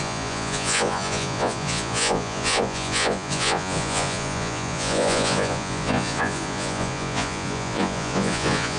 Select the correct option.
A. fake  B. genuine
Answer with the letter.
A